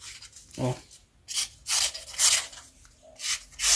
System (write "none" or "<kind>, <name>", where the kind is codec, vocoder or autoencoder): none